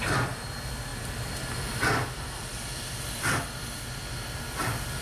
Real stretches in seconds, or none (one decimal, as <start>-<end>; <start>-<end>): 0.0-0.9; 3.4-5.0